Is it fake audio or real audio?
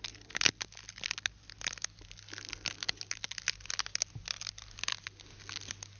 real